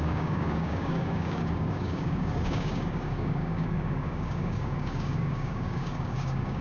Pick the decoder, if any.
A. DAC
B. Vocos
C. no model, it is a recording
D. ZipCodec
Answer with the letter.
A